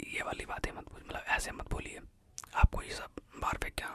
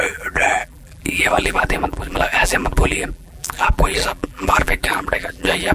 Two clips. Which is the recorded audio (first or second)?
first